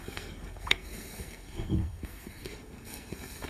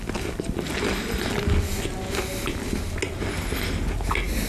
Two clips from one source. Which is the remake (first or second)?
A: first